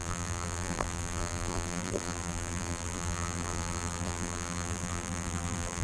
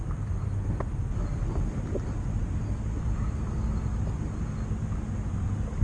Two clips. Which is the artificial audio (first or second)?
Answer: first